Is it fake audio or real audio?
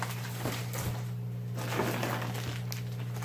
real